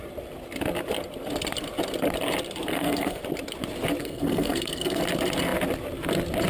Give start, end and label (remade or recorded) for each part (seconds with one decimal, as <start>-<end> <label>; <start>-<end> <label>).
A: 0.0-2.7 recorded; 2.7-3.2 remade; 3.2-4.0 recorded; 4.0-5.0 remade; 5.0-6.5 recorded

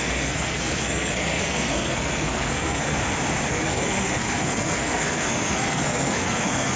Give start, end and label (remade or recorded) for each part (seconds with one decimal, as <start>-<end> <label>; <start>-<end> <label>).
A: 0.0-3.0 remade; 3.0-3.5 recorded; 3.5-6.8 remade